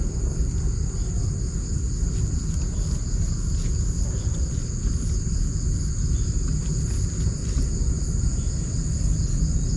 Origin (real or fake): real